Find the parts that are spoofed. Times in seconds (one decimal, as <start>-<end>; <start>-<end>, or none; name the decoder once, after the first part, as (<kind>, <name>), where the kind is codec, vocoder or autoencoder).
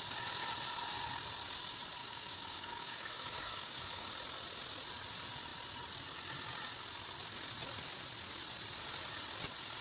2.0-4.1 (codec, DAC)